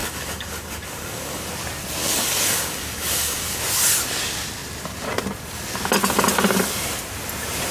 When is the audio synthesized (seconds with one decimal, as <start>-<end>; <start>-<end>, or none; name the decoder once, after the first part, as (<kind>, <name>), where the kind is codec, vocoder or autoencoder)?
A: 0.0-1.5 (codec, DAC); 2.0-3.6